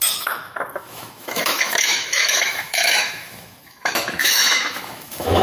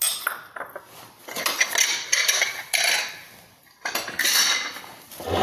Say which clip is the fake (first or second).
first